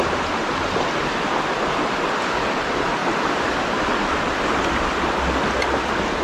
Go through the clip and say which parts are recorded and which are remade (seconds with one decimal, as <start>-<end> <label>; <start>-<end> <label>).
0.0-6.2 recorded